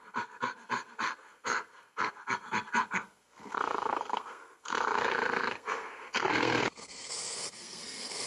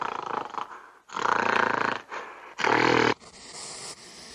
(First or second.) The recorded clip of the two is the second